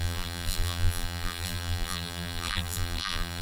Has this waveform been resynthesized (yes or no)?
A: yes